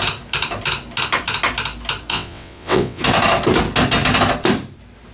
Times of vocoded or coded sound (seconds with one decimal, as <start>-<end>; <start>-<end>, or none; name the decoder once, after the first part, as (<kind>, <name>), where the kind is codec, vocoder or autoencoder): 2.1-3.0 (vocoder, WaveNeXt)